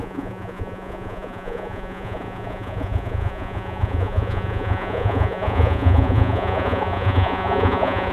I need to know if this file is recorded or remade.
remade